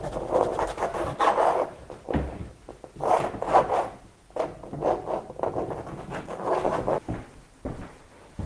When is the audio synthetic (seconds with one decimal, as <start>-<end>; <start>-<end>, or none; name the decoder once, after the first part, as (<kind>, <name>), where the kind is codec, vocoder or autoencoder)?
none